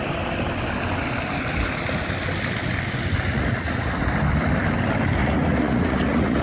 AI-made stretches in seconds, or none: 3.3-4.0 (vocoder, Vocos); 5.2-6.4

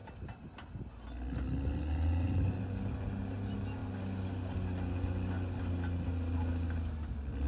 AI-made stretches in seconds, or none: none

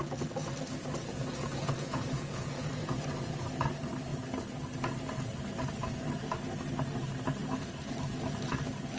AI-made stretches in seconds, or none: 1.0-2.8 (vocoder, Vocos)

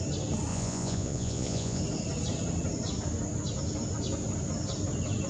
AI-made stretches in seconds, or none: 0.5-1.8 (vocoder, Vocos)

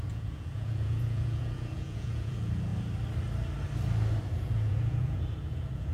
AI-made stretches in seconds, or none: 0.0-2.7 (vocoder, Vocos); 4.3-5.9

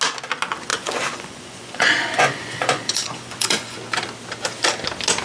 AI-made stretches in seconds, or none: 0.7-3.8 (vocoder, Vocos)